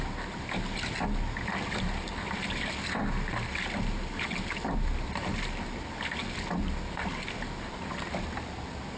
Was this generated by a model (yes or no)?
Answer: no